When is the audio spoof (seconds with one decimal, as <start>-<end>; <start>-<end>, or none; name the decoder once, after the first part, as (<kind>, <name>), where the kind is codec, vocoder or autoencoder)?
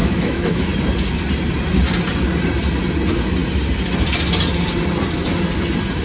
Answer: 0.0-0.7 (autoencoder, DAC-VAE)